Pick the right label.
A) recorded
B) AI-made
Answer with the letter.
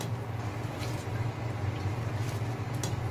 A